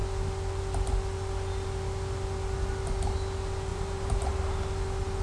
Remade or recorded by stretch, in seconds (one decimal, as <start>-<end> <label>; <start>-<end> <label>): 0.0-3.7 recorded; 3.7-4.3 remade; 4.3-5.2 recorded